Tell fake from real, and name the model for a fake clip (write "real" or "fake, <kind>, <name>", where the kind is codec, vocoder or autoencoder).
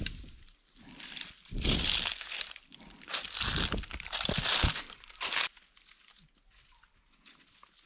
real